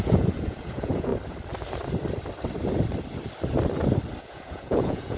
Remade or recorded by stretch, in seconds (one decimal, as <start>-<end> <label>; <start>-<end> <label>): 0.0-1.1 remade; 1.1-4.2 recorded; 4.2-5.2 remade

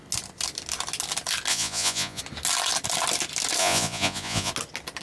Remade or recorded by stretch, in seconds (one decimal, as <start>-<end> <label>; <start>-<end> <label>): 0.0-1.5 recorded; 1.5-2.2 remade; 2.2-3.6 recorded; 3.6-4.5 remade; 4.5-5.0 recorded

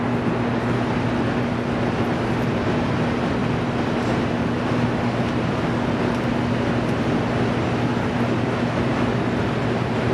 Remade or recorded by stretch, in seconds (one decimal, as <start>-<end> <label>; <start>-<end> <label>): 0.0-10.1 recorded

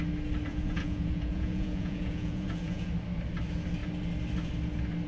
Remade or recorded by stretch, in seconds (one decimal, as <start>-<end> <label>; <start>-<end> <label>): 0.0-0.5 recorded; 0.5-2.9 remade; 2.9-5.1 recorded

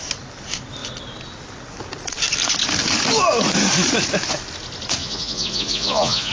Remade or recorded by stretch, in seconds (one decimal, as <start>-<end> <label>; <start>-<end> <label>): 0.0-5.0 recorded; 5.0-6.3 remade

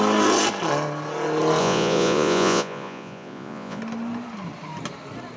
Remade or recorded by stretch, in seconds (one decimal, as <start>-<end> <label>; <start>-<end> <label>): 0.0-1.6 recorded; 1.6-3.8 remade; 3.8-5.4 recorded

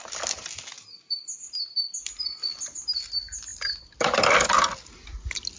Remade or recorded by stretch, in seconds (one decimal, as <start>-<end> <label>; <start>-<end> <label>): 0.0-5.6 recorded